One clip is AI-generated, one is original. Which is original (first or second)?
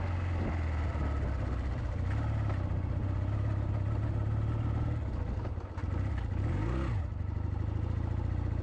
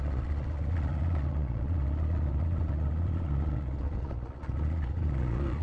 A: first